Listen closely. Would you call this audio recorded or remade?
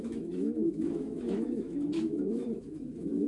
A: remade